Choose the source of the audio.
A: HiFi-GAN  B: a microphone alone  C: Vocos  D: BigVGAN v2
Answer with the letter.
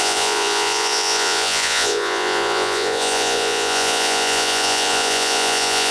C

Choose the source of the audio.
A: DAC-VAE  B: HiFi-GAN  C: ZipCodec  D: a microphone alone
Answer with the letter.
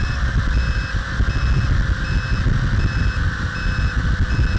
D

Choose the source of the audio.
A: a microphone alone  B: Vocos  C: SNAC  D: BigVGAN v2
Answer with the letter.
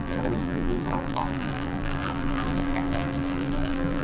D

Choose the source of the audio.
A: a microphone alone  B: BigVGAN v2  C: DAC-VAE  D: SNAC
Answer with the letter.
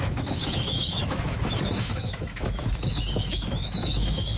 C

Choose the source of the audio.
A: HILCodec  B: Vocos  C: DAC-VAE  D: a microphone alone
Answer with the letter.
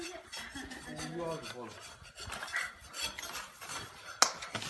D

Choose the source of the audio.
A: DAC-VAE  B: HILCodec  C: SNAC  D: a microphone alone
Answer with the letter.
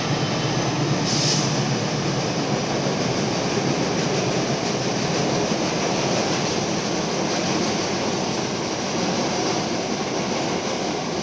D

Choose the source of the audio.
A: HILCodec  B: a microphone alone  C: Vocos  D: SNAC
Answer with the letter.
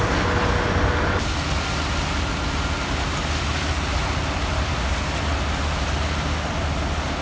B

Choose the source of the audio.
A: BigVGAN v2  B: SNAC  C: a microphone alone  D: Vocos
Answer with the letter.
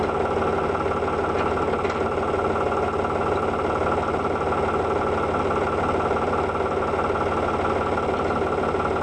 C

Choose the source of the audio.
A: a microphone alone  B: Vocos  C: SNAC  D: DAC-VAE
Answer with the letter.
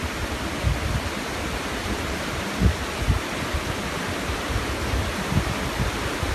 A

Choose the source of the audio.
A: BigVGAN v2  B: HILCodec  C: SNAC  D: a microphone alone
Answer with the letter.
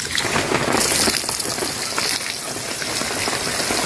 D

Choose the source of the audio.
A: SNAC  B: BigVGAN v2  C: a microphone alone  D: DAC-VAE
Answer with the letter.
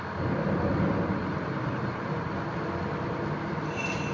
C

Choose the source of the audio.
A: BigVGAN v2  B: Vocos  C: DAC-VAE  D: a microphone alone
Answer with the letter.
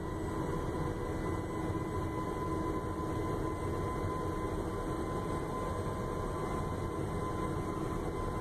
D